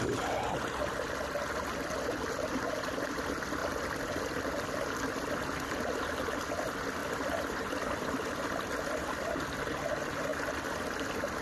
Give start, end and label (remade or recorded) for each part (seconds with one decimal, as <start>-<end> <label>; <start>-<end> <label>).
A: 0.0-3.6 recorded; 3.6-5.3 remade; 5.3-7.0 recorded; 7.0-8.4 remade; 8.4-11.4 recorded